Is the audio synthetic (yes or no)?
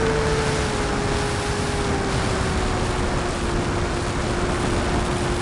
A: no